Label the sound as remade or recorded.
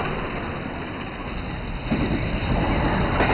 recorded